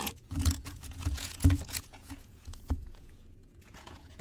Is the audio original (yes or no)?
no